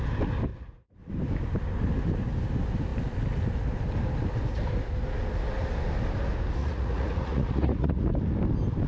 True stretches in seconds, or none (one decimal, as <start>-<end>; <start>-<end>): 0.0-0.5; 1.1-6.6; 8.1-8.9